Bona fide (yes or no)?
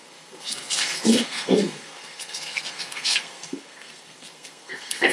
no